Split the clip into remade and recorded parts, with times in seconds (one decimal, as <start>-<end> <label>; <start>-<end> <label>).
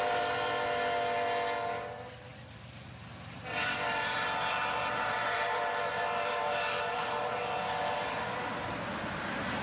0.0-2.3 recorded; 2.3-7.4 remade; 7.4-9.6 recorded